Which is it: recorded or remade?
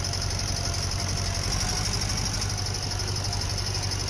recorded